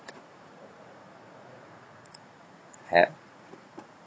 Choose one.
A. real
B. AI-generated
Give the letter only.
B